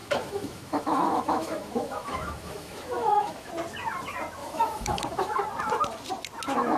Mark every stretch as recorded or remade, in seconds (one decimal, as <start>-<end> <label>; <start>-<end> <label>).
0.0-3.5 remade; 3.5-4.4 recorded; 4.4-5.4 remade; 5.4-6.8 recorded